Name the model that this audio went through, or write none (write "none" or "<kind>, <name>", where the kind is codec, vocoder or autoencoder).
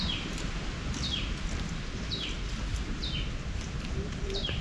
none